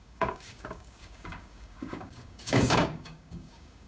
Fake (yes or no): yes